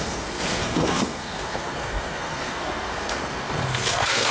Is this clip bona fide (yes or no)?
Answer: no